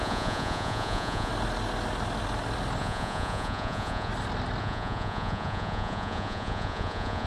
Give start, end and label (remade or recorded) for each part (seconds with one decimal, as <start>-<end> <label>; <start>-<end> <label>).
0.0-1.3 remade; 1.3-2.8 recorded; 2.8-4.1 remade; 4.1-4.6 recorded; 4.6-7.3 remade